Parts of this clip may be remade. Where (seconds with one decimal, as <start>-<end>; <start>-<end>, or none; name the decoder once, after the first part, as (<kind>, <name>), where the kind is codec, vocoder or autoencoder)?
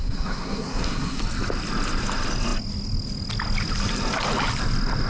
0.0-1.2 (codec, SNAC)